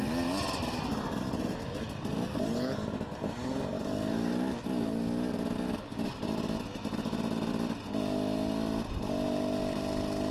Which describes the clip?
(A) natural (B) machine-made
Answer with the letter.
A